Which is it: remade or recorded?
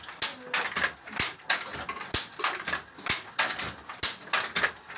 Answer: recorded